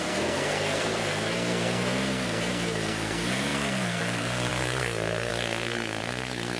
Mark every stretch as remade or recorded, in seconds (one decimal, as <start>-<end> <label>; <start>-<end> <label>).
0.0-6.6 remade